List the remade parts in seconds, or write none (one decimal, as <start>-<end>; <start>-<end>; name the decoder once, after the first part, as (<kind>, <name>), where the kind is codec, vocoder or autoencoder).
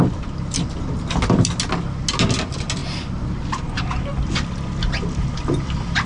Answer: none